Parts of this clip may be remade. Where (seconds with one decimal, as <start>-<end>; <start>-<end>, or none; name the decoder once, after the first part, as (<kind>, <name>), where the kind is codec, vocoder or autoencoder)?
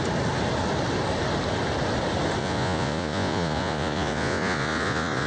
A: 2.4-5.3 (vocoder, Vocos)